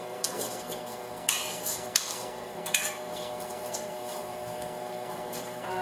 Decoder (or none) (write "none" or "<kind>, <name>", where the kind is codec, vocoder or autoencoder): codec, SNAC